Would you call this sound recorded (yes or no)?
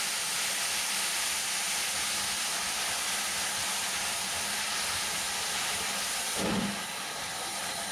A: yes